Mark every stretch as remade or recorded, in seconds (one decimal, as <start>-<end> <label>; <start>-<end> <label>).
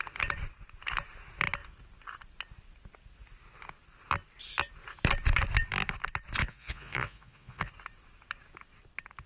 0.0-6.4 recorded; 6.4-7.7 remade; 7.7-9.3 recorded